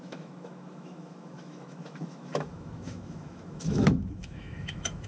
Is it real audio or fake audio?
fake